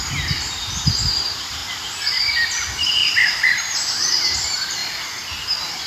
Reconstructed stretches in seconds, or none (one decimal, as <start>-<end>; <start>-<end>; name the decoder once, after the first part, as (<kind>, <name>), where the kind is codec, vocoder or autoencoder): 0.0-1.6 (vocoder, BigVGAN v2); 2.3-4.8